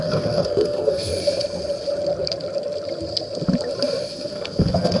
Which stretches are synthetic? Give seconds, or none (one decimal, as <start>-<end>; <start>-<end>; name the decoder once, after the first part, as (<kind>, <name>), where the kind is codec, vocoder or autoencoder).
0.0-1.1 (codec, SNAC); 4.1-5.0